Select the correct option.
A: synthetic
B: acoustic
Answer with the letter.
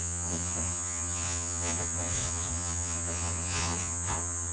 A